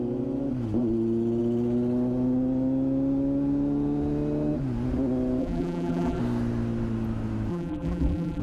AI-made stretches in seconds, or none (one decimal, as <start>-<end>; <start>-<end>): 5.4-6.2; 7.5-8.4